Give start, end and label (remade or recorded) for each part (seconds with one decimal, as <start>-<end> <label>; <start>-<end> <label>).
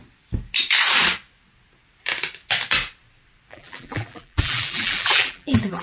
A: 0.0-3.5 recorded; 3.5-5.8 remade